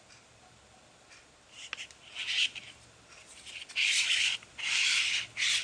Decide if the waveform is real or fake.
real